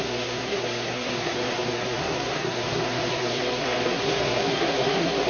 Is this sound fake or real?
fake